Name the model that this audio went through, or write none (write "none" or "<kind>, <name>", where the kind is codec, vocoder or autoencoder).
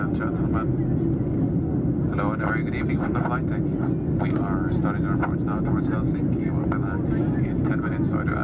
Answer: none